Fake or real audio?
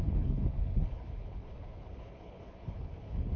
fake